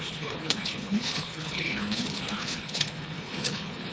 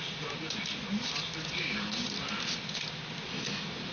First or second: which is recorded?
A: second